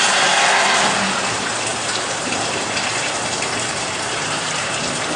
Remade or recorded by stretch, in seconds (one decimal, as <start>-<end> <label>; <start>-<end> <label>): 0.0-1.7 recorded; 1.7-4.8 remade; 4.8-5.2 recorded